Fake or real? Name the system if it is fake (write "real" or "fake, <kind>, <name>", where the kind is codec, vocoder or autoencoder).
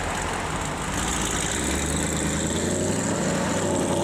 real